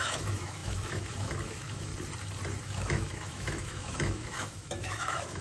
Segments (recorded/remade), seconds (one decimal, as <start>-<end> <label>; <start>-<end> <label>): 0.0-1.9 remade; 1.9-2.6 recorded; 2.6-5.4 remade